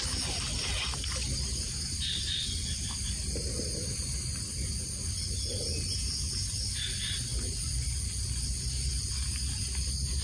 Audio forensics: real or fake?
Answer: real